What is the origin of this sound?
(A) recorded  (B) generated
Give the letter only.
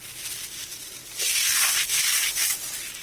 A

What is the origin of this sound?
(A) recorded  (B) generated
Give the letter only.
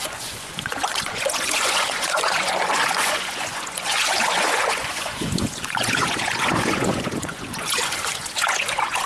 B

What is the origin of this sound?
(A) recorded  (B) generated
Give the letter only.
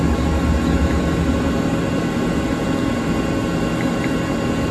A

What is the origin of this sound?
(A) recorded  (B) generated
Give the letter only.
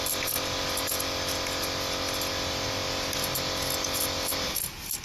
A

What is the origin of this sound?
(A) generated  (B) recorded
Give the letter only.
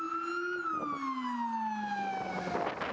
B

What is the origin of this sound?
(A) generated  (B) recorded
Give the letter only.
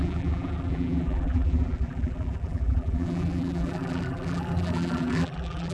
A